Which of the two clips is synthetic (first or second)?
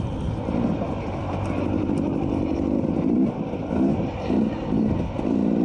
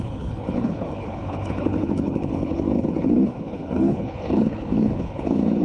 second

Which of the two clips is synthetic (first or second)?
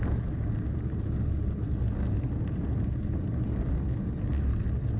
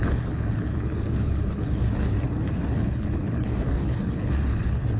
second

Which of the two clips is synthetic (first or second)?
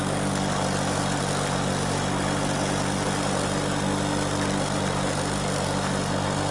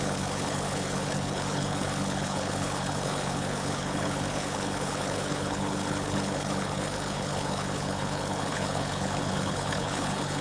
second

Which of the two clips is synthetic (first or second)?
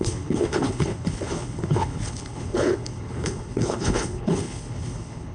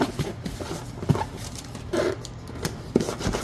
first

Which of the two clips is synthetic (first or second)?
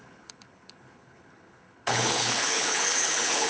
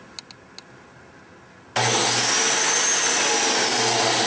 first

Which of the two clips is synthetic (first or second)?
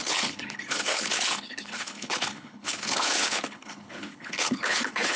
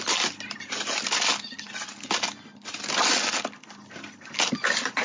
first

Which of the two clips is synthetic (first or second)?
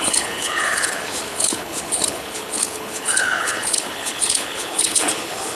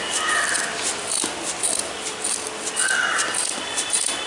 first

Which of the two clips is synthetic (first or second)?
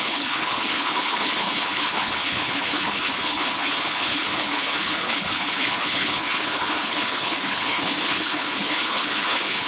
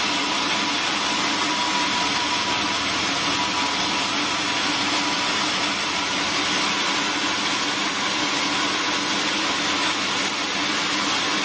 first